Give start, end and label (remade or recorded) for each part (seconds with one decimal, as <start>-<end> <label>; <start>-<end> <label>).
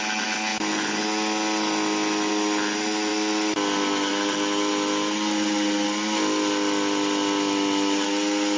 0.0-8.6 recorded